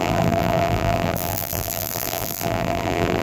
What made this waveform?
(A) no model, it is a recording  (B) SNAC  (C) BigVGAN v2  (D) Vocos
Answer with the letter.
C